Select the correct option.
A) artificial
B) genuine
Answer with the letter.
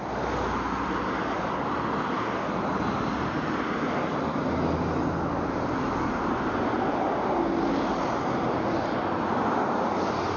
B